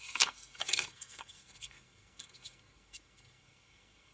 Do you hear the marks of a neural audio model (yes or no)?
yes